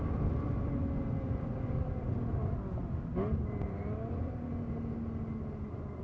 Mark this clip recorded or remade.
recorded